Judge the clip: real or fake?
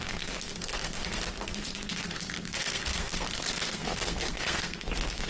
fake